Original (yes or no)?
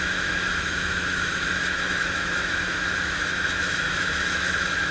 no